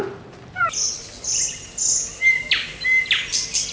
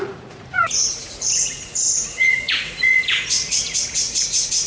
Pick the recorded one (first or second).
first